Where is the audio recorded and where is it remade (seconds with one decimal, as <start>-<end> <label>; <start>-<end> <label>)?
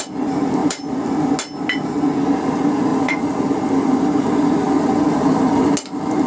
0.0-0.6 recorded; 0.6-1.3 remade; 1.3-2.9 recorded; 2.9-5.6 remade; 5.6-6.3 recorded